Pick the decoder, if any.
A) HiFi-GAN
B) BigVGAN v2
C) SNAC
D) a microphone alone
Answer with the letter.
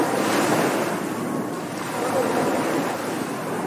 D